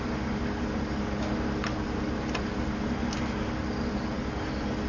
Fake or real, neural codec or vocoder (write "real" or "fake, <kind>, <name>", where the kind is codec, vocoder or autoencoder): real